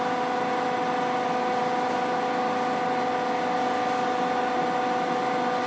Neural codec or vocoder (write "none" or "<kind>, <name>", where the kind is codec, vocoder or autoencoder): none